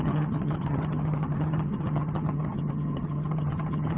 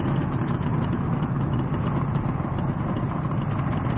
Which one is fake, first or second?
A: first